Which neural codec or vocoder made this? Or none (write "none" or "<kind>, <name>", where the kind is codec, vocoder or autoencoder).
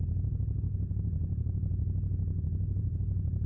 vocoder, Vocos